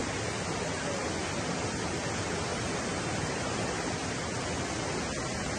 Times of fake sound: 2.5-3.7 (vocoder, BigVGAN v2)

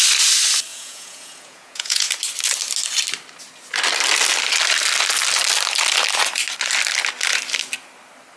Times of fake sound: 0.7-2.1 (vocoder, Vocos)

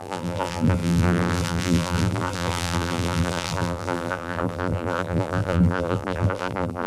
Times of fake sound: 0.0-6.9 (vocoder, BigVGAN v2)